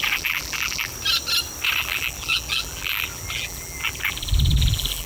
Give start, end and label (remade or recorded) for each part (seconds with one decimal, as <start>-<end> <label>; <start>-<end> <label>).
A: 0.0-0.9 remade; 0.9-1.8 recorded; 1.8-5.1 remade